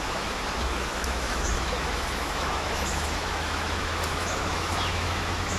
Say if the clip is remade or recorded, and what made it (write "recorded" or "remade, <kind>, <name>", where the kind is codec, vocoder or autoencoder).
remade, autoencoder, DAC-VAE